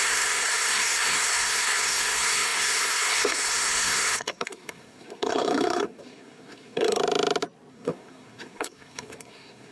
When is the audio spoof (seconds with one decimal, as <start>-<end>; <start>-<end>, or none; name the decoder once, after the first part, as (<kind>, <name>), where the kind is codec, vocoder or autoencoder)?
0.0-7.0 (codec, SNAC); 7.7-9.7